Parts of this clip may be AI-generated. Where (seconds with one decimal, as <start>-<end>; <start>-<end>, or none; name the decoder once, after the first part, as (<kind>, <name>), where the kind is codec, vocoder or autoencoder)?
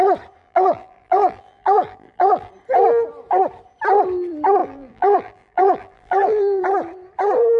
0.4-2.5 (vocoder, BigVGAN v2); 4.6-6.6